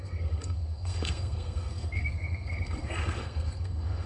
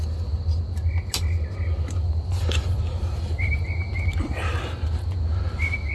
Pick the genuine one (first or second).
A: second